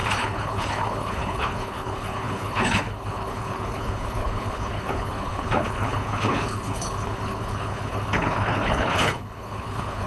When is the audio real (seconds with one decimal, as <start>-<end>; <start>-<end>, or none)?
none